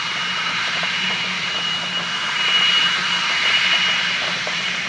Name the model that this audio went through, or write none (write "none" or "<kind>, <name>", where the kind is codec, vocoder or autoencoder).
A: vocoder, BigVGAN v2